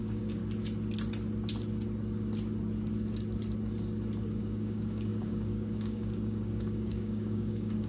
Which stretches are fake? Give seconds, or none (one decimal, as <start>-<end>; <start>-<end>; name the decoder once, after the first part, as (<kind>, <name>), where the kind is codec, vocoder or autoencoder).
0.0-0.4 (codec, DAC); 4.4-7.9